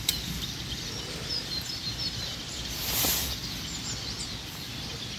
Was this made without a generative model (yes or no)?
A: yes